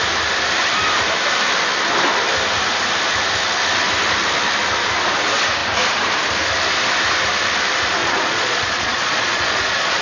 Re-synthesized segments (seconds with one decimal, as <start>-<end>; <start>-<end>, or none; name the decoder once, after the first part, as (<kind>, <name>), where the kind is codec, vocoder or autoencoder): 8.0-10.0 (vocoder, Vocos)